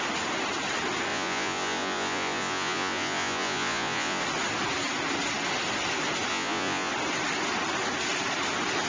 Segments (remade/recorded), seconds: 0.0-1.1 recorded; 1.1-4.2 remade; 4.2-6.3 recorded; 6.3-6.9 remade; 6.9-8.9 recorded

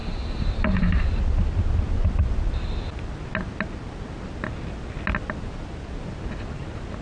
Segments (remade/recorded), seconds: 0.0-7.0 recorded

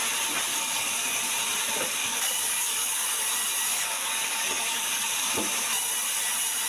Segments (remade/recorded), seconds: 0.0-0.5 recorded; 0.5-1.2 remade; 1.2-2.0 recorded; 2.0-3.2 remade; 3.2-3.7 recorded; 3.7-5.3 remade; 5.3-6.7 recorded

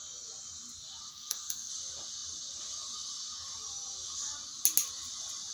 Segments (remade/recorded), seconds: 0.0-1.1 recorded; 1.1-1.7 remade; 1.7-5.5 recorded

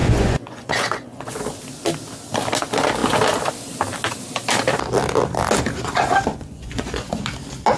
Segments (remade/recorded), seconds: 0.0-1.4 remade; 1.4-6.3 recorded; 6.3-7.2 remade; 7.2-7.8 recorded

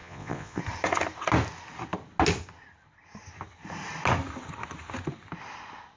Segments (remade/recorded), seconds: 0.0-0.6 remade; 0.6-6.0 recorded

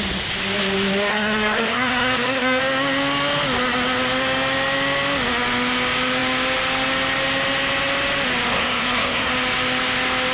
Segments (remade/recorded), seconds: 0.0-1.1 recorded; 1.1-2.6 remade; 2.6-8.5 recorded; 8.5-9.3 remade; 9.3-10.3 recorded

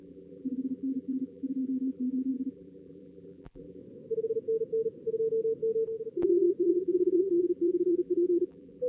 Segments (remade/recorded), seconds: 0.0-3.8 remade; 3.8-6.7 recorded; 6.7-8.9 remade